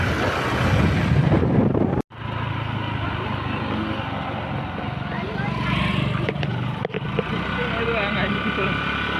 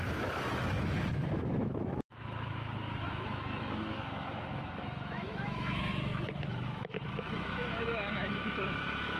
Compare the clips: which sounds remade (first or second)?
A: second